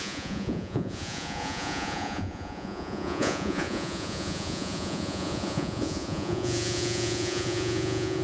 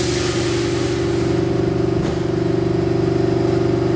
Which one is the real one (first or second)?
second